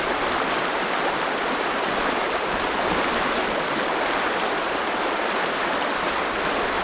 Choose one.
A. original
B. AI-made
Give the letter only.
A